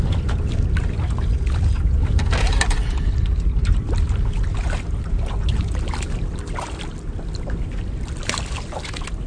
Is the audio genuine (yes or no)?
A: yes